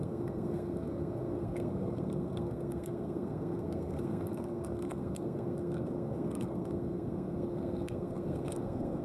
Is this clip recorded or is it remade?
remade